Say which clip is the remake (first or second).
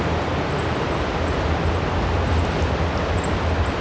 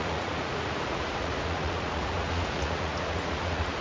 second